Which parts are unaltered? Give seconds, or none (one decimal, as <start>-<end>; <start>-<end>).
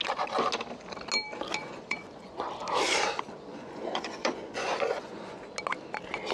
0.0-1.6; 2.5-3.5; 5.4-6.3